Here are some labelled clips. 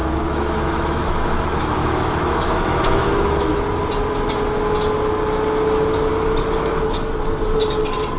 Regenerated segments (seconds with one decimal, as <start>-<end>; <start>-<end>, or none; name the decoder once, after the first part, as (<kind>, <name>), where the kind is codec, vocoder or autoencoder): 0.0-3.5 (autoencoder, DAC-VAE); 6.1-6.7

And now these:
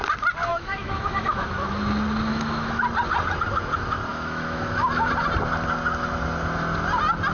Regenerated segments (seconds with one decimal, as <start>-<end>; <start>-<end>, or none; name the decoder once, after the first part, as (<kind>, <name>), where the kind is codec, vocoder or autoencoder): 0.5-1.8 (autoencoder, DAC-VAE); 2.3-2.8; 4.1-5.1

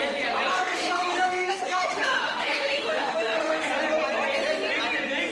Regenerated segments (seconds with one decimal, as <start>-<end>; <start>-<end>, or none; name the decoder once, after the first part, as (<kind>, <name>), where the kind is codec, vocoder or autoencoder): 0.5-3.7 (autoencoder, DAC-VAE)

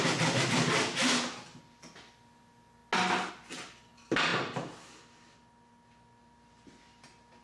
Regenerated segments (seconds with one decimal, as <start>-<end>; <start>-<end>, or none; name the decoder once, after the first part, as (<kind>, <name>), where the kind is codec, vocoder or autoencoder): none

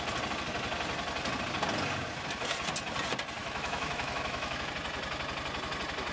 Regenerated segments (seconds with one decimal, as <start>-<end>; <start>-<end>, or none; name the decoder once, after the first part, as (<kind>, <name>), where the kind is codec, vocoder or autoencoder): 3.4-4.7 (autoencoder, DAC-VAE)

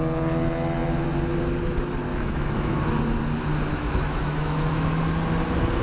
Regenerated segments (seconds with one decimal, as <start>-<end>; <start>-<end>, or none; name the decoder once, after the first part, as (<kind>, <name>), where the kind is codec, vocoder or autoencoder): 2.1-2.8 (autoencoder, DAC-VAE); 3.7-5.0